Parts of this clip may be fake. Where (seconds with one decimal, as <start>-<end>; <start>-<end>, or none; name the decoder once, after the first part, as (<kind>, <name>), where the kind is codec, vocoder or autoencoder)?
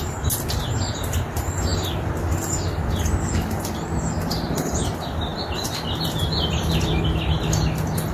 none